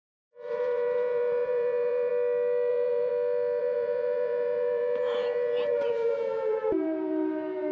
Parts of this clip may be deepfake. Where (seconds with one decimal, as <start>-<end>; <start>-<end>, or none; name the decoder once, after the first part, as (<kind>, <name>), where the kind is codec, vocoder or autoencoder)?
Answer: 0.0-2.1 (vocoder, Vocos); 2.7-3.1; 3.6-7.7